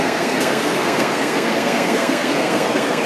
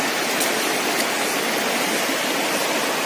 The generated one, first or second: first